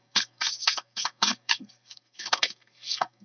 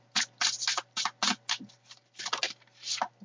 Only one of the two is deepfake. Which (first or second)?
first